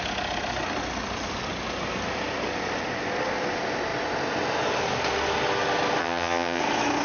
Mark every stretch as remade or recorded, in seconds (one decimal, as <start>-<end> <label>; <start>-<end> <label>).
0.0-6.0 recorded; 6.0-6.6 remade; 6.6-7.0 recorded